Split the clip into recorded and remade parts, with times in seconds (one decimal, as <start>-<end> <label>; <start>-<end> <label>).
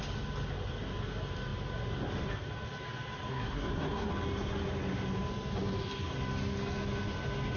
0.0-3.3 recorded; 3.3-4.1 remade; 4.1-7.6 recorded